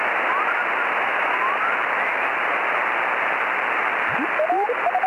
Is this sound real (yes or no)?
yes